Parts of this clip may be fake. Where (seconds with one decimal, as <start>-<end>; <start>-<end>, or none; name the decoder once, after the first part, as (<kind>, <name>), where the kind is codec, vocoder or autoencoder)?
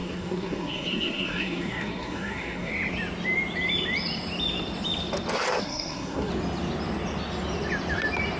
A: 0.0-2.7 (codec, SNAC); 5.6-6.3